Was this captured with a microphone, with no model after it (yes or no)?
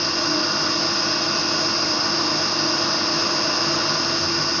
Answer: yes